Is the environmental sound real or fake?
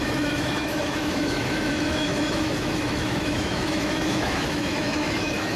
fake